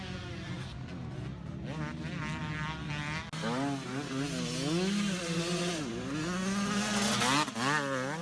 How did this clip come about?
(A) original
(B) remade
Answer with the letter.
A